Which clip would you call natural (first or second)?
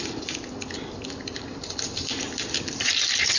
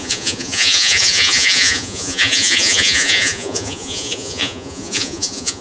first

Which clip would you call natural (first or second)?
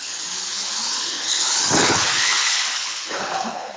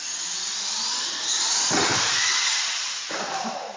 second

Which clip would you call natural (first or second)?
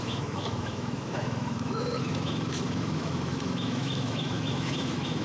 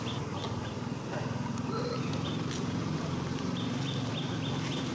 second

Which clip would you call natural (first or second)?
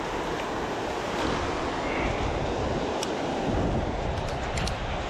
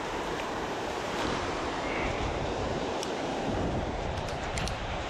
first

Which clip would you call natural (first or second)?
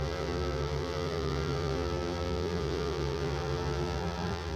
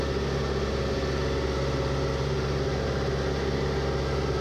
second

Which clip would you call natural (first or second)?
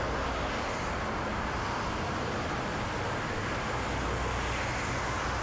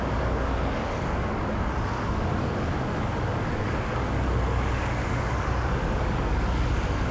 first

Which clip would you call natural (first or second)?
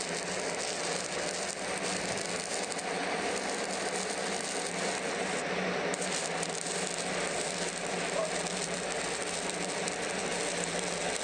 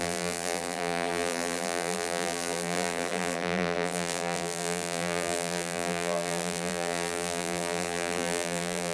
first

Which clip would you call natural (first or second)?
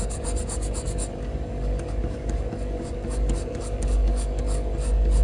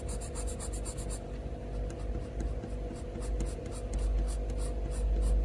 second